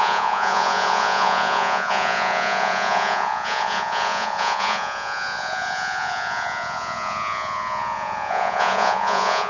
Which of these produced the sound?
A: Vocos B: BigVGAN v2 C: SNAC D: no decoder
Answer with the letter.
A